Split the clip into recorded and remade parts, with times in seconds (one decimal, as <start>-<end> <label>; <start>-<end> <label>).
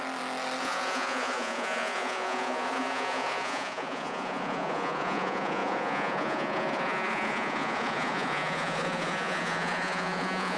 0.0-0.6 recorded; 0.6-10.6 remade